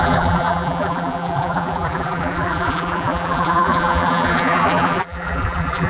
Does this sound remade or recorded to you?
remade